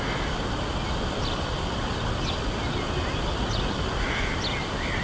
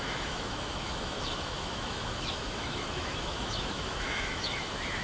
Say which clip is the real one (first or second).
first